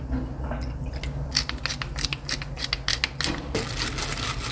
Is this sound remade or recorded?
recorded